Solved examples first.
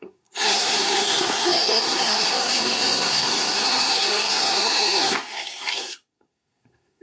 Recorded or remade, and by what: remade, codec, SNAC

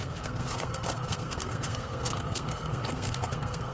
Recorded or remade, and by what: remade, codec, SNAC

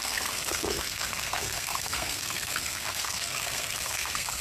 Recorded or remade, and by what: remade, codec, SNAC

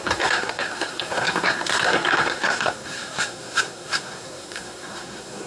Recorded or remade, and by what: remade, codec, SNAC